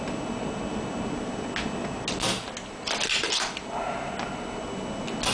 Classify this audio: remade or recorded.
recorded